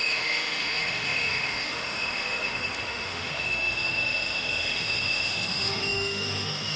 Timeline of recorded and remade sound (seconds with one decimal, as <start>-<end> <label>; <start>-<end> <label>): 0.0-6.8 remade